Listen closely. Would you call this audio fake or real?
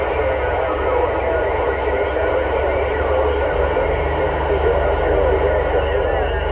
real